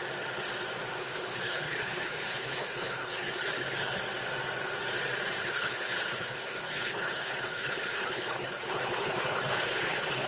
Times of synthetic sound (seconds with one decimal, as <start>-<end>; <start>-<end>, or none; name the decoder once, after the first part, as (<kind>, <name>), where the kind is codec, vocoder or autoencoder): 1.0-4.0 (codec, HILCodec); 5.4-10.3